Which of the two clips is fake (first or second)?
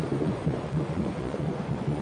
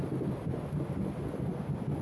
first